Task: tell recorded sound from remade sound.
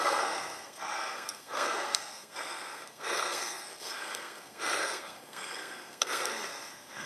remade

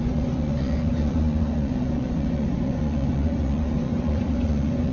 remade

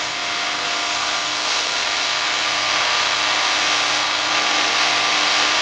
remade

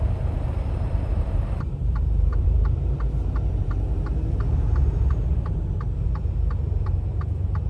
remade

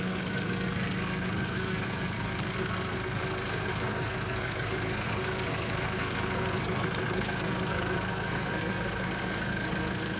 remade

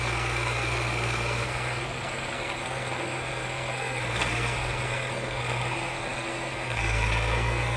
remade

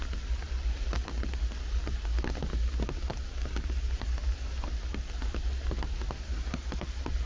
recorded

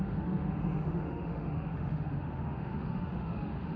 remade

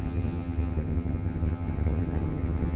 remade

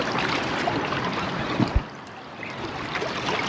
recorded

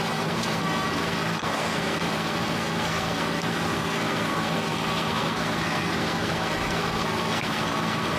remade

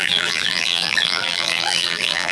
remade